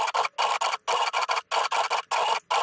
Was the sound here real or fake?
real